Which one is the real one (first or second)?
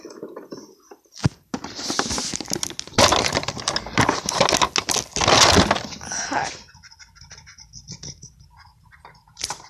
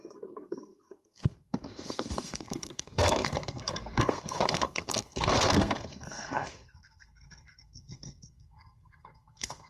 first